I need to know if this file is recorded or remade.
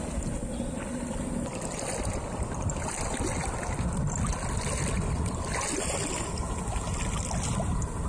recorded